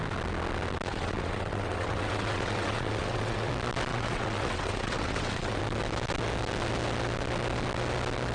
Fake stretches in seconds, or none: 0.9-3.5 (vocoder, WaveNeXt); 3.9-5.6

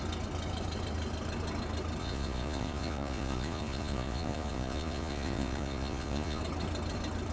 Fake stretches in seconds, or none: 2.0-6.4 (vocoder, Vocos)

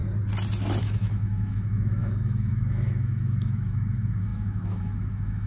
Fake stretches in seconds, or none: 0.8-5.5 (autoencoder, DAC-VAE)

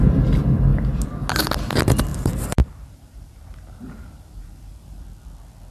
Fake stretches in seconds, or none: 2.1-5.0 (vocoder, BigVGAN v2)

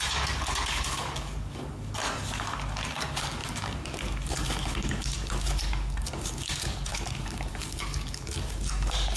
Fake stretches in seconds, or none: 0.0-9.2 (codec, DAC)